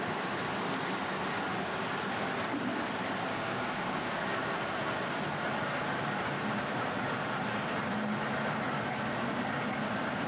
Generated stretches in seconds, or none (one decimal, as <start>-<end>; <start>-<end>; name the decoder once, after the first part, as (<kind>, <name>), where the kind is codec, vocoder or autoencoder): 3.3-4.2 (codec, DAC)